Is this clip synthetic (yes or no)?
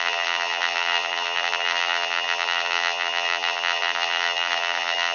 yes